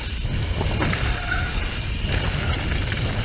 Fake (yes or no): no